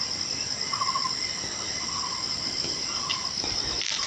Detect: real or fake real